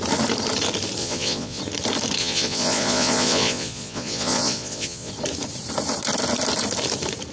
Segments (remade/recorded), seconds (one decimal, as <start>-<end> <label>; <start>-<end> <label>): 0.0-1.0 recorded; 1.0-1.6 remade; 1.6-2.2 recorded; 2.2-5.1 remade; 5.1-7.3 recorded